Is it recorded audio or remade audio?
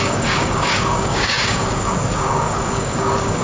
remade